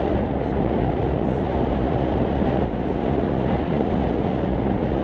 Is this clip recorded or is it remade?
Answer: remade